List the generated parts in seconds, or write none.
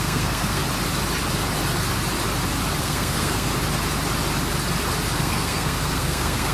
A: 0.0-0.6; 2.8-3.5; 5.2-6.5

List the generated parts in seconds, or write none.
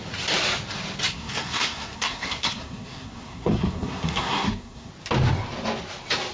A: 1.1-4.9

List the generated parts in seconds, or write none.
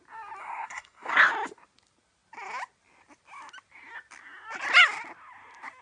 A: 0.4-1.1